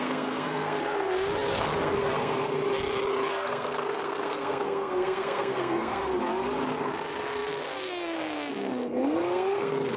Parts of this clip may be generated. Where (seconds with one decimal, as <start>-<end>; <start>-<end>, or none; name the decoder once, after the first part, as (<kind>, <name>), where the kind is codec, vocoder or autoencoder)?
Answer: 0.0-2.6 (codec, SNAC); 3.3-6.0; 6.8-10.0